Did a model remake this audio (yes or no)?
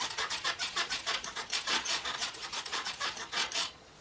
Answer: yes